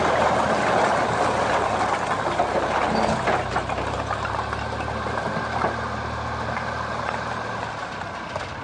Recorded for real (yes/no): yes